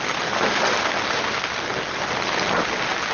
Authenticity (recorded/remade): recorded